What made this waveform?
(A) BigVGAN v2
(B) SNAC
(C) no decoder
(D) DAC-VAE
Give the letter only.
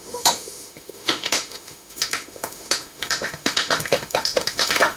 D